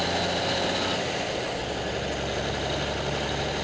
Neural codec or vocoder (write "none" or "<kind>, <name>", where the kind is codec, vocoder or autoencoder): none